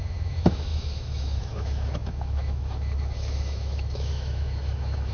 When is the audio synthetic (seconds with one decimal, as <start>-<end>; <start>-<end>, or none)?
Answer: 0.0-5.1